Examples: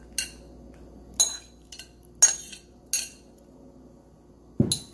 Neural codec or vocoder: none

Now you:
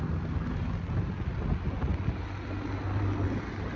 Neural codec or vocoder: none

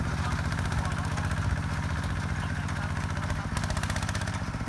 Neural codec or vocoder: none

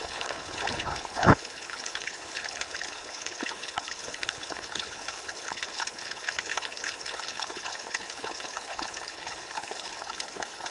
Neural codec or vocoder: codec, HILCodec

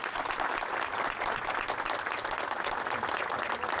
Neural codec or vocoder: none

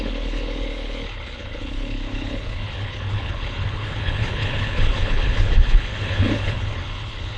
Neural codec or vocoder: codec, HILCodec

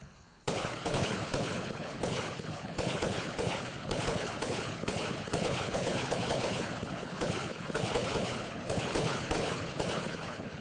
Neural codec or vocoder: codec, HILCodec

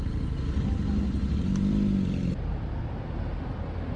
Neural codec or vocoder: none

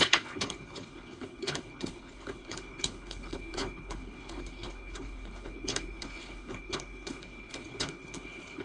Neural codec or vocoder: codec, HILCodec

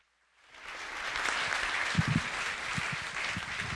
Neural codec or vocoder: none